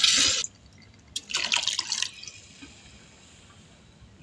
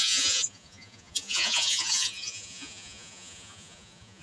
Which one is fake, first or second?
second